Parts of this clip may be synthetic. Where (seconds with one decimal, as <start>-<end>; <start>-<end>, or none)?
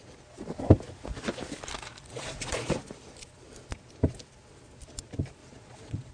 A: 2.1-2.7; 5.4-6.1